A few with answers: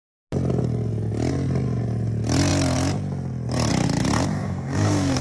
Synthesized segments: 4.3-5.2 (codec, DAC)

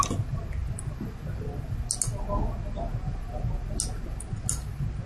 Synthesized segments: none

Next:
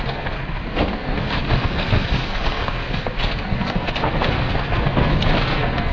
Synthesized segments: 0.0-5.9 (codec, SNAC)

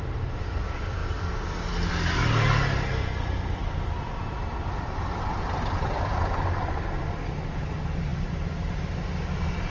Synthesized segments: none